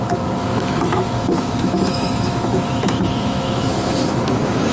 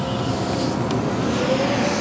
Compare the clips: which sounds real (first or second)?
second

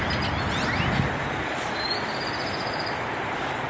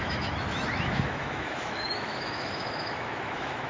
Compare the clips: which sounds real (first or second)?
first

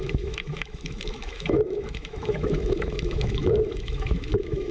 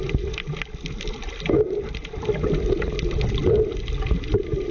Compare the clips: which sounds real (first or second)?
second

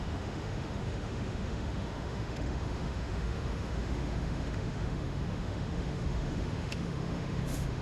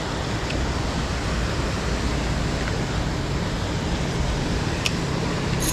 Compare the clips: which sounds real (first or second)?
second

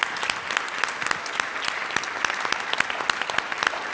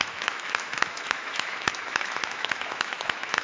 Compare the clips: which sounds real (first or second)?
first